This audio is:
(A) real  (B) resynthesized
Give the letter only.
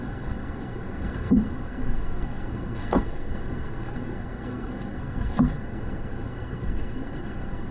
B